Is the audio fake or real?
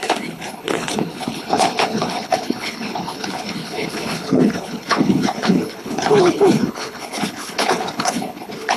fake